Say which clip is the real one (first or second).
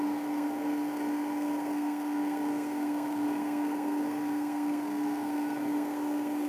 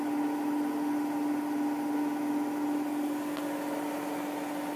second